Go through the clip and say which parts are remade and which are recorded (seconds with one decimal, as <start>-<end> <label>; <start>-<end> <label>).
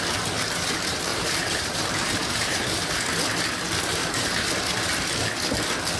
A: 0.0-1.1 recorded; 1.1-2.7 remade; 2.7-4.0 recorded; 4.0-4.5 remade; 4.5-6.0 recorded